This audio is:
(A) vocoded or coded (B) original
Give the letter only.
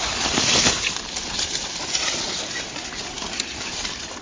B